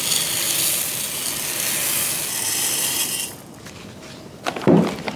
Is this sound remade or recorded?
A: recorded